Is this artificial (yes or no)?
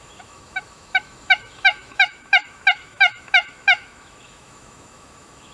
yes